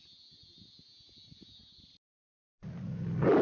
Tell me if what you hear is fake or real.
real